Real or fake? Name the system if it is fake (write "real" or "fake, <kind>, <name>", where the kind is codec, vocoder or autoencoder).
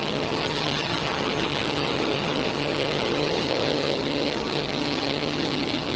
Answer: fake, vocoder, HiFi-GAN